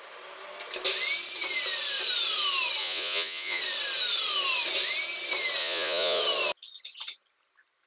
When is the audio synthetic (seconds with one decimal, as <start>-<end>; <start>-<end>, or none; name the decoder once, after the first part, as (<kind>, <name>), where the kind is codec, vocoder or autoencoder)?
2.8-3.6 (vocoder, Vocos); 5.6-6.2